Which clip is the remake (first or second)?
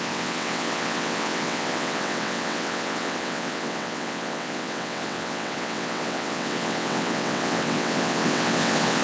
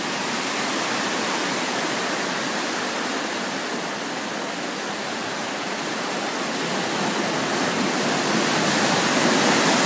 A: first